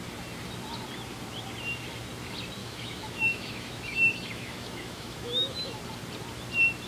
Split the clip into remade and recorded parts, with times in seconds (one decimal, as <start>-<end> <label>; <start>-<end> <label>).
0.0-2.6 recorded; 2.6-5.8 remade; 5.8-6.9 recorded